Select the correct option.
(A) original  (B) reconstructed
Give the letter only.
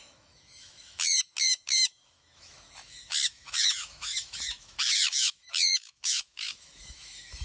B